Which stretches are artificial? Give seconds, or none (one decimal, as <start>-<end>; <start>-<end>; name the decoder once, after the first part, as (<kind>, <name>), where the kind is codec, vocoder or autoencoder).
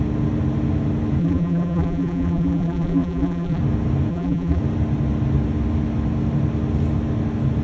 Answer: 1.2-3.6 (vocoder, BigVGAN v2); 4.1-4.6